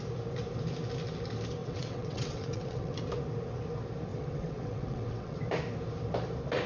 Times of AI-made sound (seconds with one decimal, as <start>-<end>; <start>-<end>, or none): 1.6-3.0; 4.1-5.4